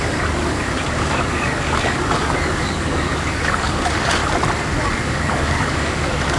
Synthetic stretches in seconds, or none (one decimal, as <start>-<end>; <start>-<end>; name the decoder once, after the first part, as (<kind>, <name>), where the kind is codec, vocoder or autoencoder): 0.0-4.2 (codec, DAC); 4.8-6.4